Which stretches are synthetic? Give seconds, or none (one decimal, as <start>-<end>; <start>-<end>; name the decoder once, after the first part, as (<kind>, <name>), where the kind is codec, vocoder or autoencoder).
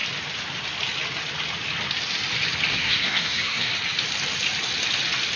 2.7-3.7 (codec, SNAC)